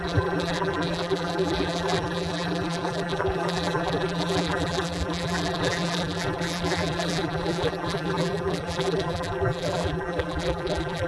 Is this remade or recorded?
remade